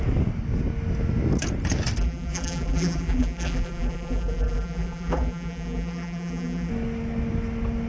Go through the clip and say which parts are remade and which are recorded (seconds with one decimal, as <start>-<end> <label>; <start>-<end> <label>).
0.0-2.0 recorded; 2.0-6.7 remade; 6.7-7.9 recorded

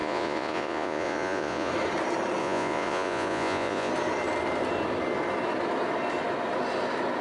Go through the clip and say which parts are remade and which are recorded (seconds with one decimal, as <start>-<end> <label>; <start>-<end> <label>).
0.0-1.7 remade; 1.7-2.4 recorded; 2.4-3.9 remade; 3.9-7.2 recorded

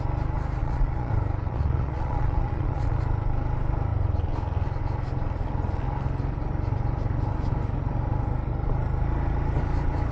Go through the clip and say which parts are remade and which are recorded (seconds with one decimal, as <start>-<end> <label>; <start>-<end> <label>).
0.0-0.6 recorded; 0.6-1.1 remade; 1.1-1.5 recorded; 1.5-3.0 remade; 3.0-10.1 recorded

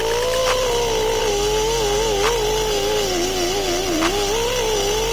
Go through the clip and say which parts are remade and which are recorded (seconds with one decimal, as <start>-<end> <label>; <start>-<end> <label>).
0.0-5.1 recorded

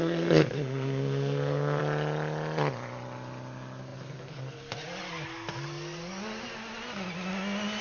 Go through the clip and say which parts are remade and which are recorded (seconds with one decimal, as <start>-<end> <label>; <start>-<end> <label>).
0.0-1.8 remade; 1.8-7.8 recorded